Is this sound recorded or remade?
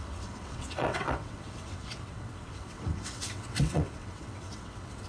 remade